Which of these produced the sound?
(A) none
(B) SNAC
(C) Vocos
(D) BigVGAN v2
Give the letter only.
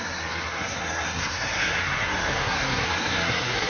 B